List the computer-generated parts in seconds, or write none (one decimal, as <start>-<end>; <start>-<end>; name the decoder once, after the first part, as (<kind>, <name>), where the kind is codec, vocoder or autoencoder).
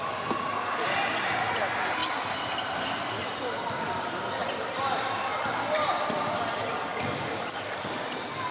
0.5-1.1 (vocoder, BigVGAN v2); 4.4-6.0